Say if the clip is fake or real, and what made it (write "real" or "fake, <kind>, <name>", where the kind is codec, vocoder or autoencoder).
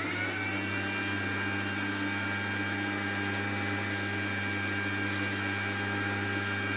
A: real